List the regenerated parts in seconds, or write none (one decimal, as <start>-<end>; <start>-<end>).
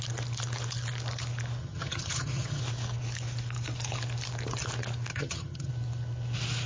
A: 1.6-2.6; 5.1-5.7